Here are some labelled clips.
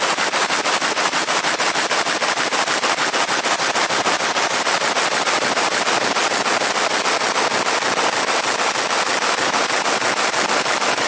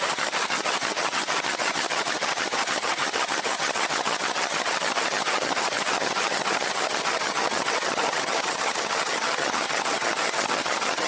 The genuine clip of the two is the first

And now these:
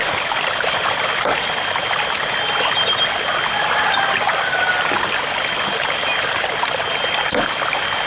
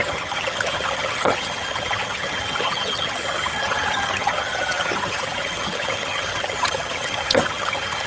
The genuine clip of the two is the first